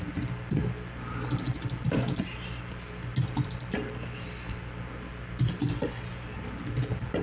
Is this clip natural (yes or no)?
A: yes